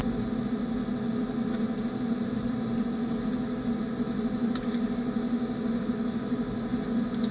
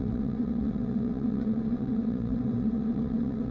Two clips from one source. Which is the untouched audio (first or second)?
first